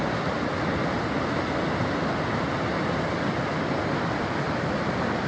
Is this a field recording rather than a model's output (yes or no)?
yes